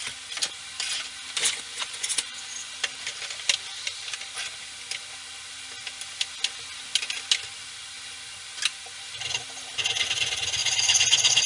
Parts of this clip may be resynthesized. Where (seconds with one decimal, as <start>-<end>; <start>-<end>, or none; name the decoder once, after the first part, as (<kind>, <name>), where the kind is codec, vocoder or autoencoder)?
1.4-2.7 (vocoder, Vocos); 10.6-11.5